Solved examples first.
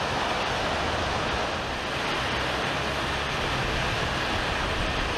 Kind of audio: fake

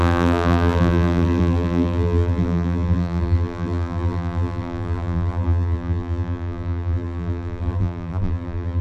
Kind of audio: fake